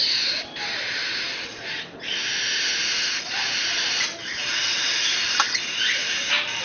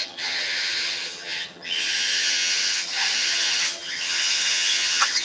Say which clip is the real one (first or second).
first